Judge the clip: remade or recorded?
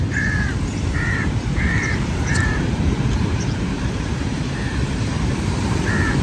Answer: remade